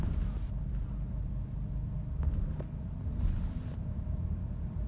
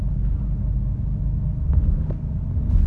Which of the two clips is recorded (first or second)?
second